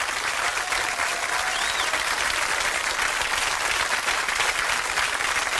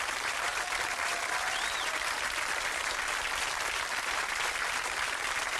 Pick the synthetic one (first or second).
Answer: second